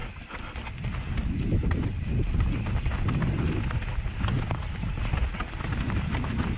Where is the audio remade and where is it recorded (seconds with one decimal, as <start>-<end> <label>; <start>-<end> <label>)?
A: 0.0-6.6 recorded